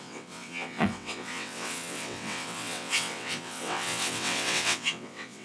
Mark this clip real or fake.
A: fake